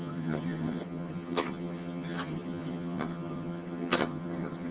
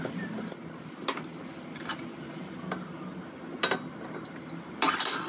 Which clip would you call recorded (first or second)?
second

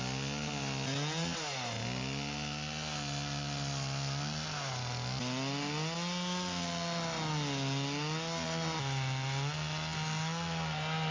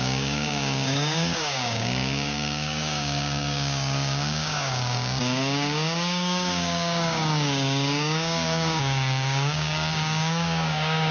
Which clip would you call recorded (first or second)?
first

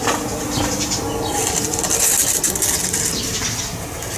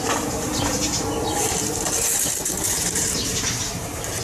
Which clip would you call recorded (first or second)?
first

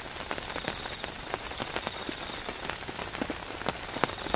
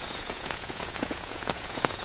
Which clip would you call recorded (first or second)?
first